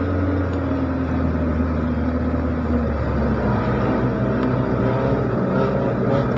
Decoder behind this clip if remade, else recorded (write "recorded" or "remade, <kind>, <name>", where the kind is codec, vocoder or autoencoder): recorded